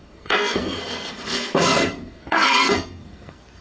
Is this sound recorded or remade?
remade